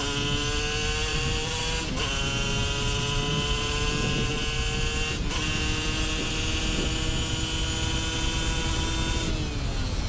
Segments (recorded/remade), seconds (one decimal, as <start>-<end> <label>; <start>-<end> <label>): 0.0-1.1 recorded; 1.1-1.6 remade; 1.6-10.1 recorded

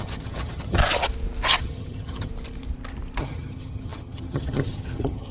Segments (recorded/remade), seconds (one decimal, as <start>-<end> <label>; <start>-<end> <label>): 0.0-0.8 remade; 0.8-1.6 recorded; 1.6-2.3 remade; 2.3-3.2 recorded; 3.2-5.3 remade

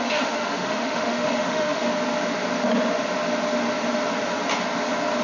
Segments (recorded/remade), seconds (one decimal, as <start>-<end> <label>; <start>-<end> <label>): 0.0-1.9 remade; 1.9-5.2 recorded

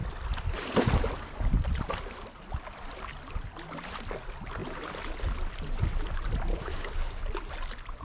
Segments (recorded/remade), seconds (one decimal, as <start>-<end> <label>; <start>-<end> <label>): 0.0-6.5 recorded; 6.5-7.2 remade; 7.2-8.0 recorded

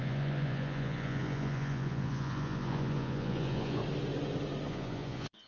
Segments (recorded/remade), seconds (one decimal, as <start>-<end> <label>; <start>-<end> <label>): 0.0-3.8 remade; 3.8-4.7 recorded; 4.7-5.5 remade

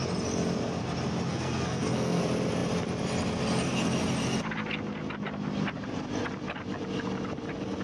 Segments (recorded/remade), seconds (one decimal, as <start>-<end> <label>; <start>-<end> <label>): 0.0-1.3 recorded; 1.3-2.2 remade; 2.2-7.8 recorded

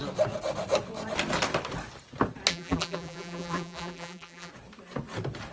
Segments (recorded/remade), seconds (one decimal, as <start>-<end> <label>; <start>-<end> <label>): 0.0-2.5 recorded; 2.5-4.5 remade; 4.5-5.5 recorded